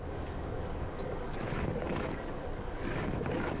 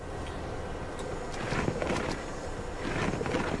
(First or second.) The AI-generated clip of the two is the first